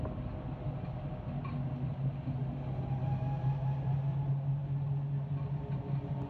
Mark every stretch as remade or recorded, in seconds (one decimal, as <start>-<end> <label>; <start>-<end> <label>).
0.0-6.3 recorded